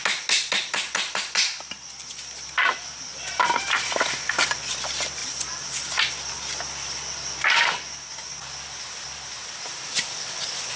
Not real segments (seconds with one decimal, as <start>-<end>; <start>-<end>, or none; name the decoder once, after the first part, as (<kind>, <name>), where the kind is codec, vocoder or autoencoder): none